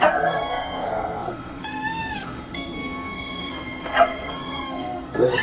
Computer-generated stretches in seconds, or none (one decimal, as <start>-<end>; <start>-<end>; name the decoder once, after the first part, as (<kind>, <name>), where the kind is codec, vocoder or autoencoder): 0.0-5.4 (codec, SNAC)